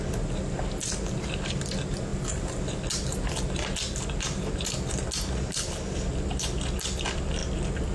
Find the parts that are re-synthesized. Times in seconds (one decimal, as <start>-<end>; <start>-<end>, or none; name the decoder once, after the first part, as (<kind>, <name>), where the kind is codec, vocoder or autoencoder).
none